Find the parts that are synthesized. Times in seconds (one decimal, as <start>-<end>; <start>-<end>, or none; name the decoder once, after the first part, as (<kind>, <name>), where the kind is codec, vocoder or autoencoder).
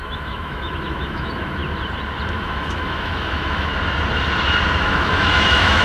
0.0-1.6 (autoencoder, DAC-VAE); 2.3-3.7; 4.8-5.8